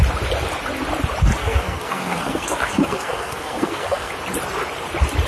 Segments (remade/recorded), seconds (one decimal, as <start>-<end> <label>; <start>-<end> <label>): 0.0-1.4 recorded; 1.4-4.1 remade; 4.1-5.3 recorded